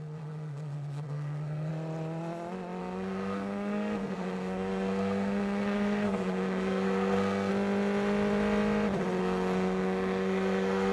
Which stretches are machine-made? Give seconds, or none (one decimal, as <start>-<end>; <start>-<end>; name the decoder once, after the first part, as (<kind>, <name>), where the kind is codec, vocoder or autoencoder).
0.0-1.7 (codec, SNAC); 2.8-7.5; 9.2-10.9